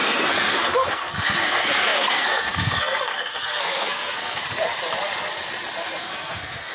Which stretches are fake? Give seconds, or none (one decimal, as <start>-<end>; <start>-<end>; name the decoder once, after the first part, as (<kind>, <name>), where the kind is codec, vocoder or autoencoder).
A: 0.0-4.4 (codec, SNAC); 6.0-6.7